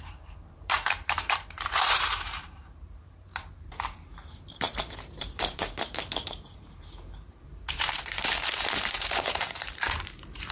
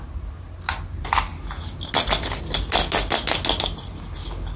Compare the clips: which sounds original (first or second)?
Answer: second